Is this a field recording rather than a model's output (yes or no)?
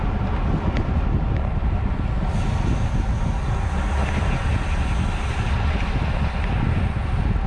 yes